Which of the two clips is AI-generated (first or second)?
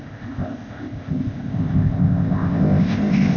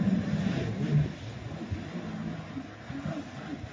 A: first